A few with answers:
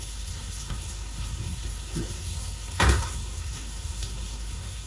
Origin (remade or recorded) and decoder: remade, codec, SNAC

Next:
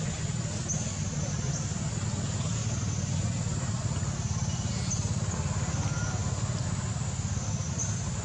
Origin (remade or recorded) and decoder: recorded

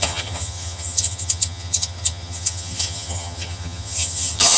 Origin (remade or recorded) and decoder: remade, vocoder, HiFi-GAN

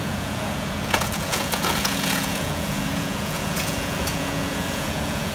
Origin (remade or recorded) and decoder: remade, vocoder, Vocos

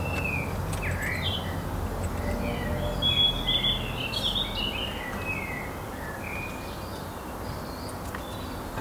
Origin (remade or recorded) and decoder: recorded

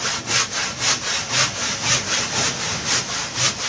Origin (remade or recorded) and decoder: recorded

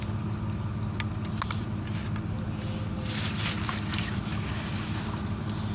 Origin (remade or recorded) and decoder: recorded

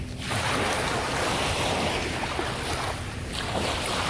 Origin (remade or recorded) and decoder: recorded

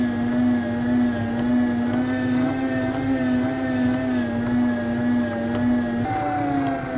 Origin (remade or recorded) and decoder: recorded